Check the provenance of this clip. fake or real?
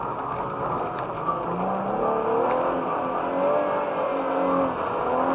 real